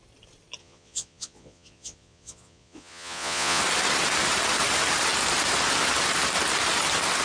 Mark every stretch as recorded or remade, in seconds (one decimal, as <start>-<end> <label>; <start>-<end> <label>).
0.0-0.6 recorded; 0.6-3.6 remade; 3.6-7.2 recorded